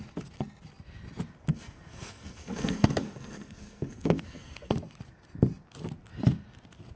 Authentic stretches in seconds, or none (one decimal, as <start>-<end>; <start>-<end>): 0.0-1.5; 4.7-7.0